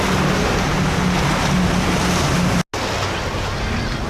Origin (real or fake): real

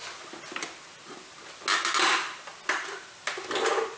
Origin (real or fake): real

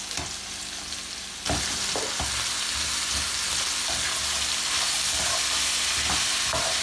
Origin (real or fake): real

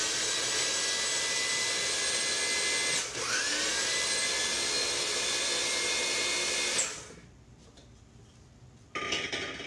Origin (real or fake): real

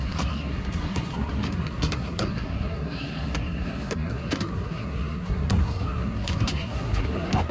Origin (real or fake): fake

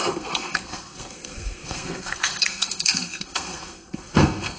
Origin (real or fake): fake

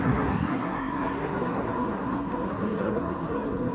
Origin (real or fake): fake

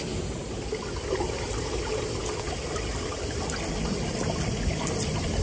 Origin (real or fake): real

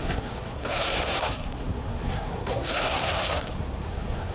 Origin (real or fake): fake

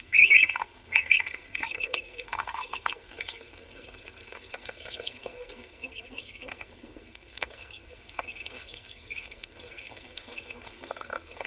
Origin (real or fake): fake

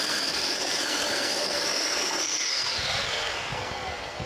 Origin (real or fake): fake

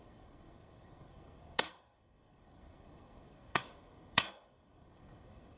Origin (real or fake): fake